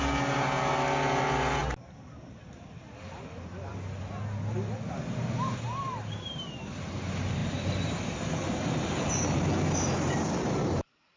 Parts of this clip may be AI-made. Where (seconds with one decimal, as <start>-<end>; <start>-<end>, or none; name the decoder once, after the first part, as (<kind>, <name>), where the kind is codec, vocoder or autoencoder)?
none